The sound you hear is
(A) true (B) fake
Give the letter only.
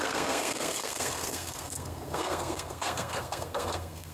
B